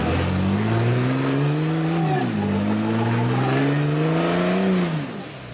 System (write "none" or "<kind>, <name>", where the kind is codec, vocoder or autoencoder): none